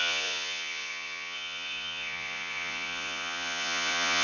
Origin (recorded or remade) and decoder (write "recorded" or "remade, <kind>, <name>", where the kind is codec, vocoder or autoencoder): remade, vocoder, Vocos